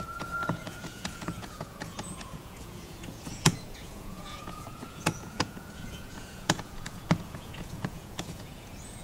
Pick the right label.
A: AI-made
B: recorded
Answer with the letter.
A